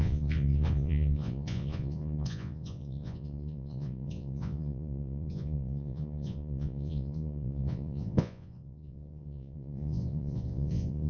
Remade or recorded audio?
remade